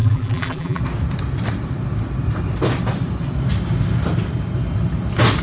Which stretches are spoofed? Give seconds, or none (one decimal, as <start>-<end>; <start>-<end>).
0.0-0.8